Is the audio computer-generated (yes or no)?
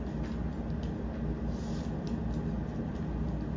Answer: no